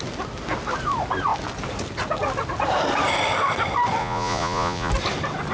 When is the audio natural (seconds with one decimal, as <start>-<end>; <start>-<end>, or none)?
0.0-4.0; 4.9-5.5